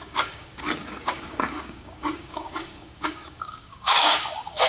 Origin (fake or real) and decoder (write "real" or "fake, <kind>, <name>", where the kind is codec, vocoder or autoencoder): fake, codec, DAC